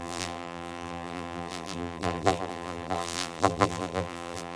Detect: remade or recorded remade